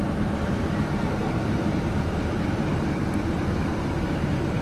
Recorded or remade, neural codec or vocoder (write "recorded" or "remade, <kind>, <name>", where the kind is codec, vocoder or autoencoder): remade, vocoder, BigVGAN v2